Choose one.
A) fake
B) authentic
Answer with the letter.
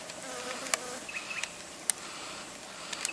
B